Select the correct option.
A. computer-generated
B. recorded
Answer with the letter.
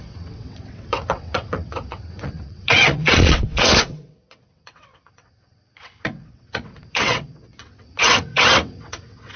A